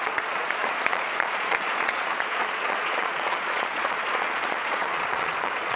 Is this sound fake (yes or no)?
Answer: yes